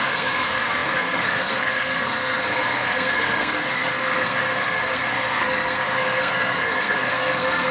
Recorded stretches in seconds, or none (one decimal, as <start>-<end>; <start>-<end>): none